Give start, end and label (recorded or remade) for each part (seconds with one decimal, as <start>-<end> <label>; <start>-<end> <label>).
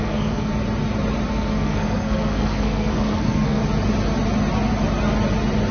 0.0-0.5 remade; 0.5-1.3 recorded; 1.3-3.6 remade; 3.6-5.7 recorded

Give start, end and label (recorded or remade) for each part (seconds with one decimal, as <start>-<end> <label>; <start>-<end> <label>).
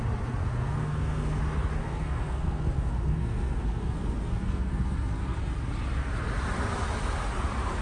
0.0-0.4 recorded; 0.4-1.4 remade; 1.4-1.8 recorded; 1.8-5.4 remade; 5.4-7.8 recorded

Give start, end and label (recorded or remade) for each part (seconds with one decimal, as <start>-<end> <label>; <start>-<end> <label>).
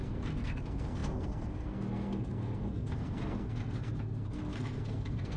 0.0-5.4 remade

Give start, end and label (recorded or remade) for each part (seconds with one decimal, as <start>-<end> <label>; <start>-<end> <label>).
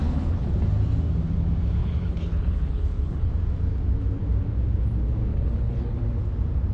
0.0-0.5 remade; 0.5-1.8 recorded; 1.8-3.3 remade; 3.3-5.3 recorded; 5.3-6.0 remade; 6.0-6.7 recorded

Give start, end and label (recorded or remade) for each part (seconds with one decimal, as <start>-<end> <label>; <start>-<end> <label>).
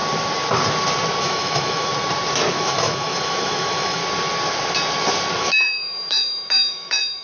0.0-1.2 recorded; 1.2-1.9 remade; 1.9-2.5 recorded; 2.5-4.0 remade; 4.0-5.4 recorded; 5.4-7.2 remade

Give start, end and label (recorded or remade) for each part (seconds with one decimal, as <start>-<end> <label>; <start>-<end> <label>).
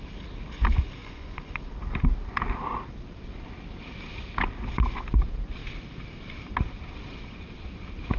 0.0-1.0 recorded; 1.0-1.6 remade; 1.6-8.2 recorded